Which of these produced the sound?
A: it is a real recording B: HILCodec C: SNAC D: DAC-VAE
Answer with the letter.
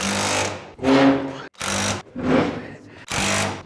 A